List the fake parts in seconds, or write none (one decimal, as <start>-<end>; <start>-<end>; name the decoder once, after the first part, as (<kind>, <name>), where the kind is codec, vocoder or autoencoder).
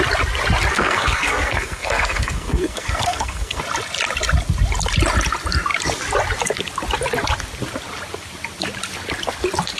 0.7-3.6 (codec, SNAC)